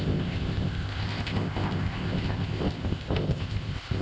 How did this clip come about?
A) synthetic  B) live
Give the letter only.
A